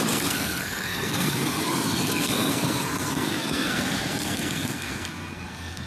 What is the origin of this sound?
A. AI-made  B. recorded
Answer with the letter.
A